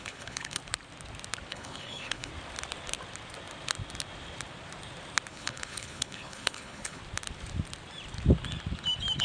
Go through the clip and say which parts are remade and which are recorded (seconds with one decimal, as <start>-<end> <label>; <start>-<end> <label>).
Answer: 0.0-0.6 remade; 0.6-1.5 recorded; 1.5-2.3 remade; 2.3-5.3 recorded; 5.3-7.0 remade; 7.0-9.2 recorded